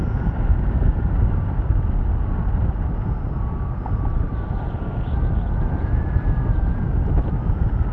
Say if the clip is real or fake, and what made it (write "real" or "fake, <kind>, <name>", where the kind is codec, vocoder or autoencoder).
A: real